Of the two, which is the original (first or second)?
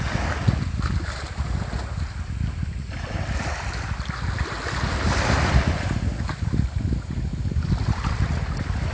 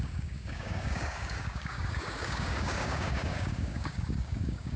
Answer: first